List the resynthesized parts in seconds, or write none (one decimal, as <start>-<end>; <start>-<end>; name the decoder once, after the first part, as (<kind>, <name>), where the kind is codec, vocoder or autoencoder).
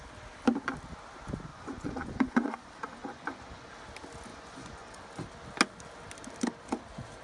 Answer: 1.5-3.7 (vocoder, Vocos); 4.3-5.0